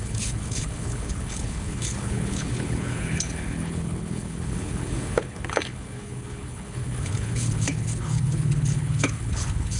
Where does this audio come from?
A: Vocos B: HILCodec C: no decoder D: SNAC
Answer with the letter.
B